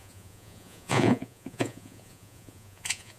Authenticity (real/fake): fake